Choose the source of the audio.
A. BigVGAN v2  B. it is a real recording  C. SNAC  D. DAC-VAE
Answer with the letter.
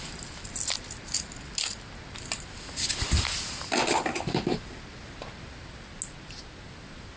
B